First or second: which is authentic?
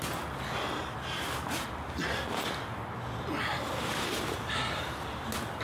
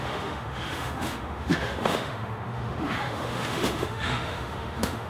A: first